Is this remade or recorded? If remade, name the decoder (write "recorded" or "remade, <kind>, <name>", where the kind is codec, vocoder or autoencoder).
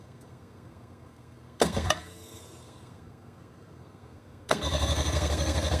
remade, codec, SNAC